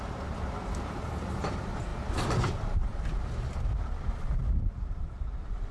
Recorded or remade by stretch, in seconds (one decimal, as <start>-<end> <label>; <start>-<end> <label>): 0.0-2.9 remade; 2.9-3.8 recorded; 3.8-5.7 remade